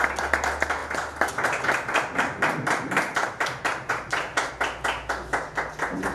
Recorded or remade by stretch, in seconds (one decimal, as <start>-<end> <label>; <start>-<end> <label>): 0.0-3.1 recorded; 3.1-4.5 remade; 4.5-6.1 recorded